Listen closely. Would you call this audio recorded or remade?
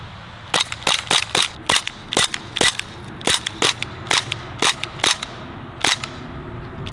recorded